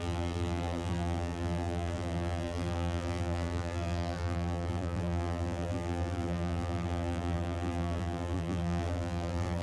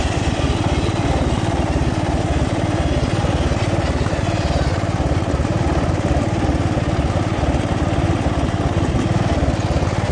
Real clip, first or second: second